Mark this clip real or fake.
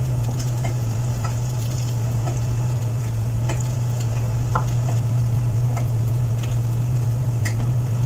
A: fake